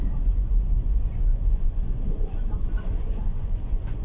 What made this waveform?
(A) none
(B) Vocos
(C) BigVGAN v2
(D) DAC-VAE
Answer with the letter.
B